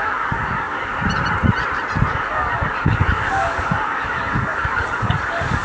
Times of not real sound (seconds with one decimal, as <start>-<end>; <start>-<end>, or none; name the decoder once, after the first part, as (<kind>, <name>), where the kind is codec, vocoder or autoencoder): 0.0-1.0 (codec, DAC); 2.1-5.6